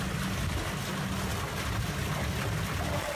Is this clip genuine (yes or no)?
yes